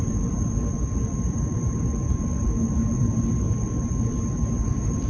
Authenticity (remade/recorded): remade